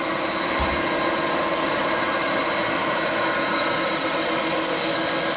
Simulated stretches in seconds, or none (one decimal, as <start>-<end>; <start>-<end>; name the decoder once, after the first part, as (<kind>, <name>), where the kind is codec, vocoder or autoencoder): none